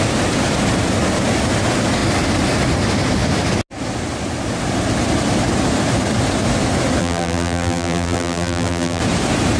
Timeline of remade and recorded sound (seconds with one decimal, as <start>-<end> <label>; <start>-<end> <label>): 0.0-7.0 recorded; 7.0-9.0 remade; 9.0-9.6 recorded